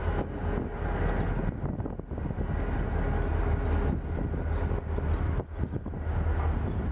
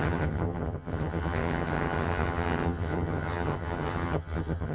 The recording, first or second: first